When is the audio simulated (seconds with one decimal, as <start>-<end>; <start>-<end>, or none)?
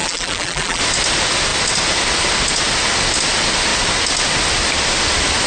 0.0-0.8